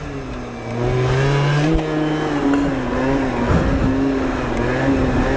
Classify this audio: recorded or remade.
recorded